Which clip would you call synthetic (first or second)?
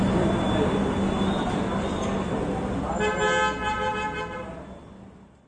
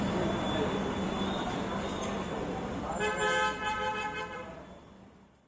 second